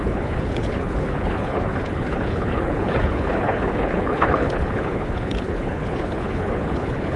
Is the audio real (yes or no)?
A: no